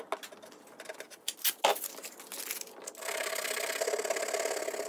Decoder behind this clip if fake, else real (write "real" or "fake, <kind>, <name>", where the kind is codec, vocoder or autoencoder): real